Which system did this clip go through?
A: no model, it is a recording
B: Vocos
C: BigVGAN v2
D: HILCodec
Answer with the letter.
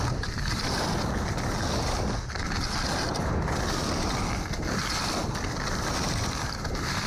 A